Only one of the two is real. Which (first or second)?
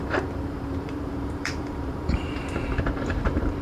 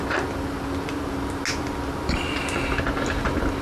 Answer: second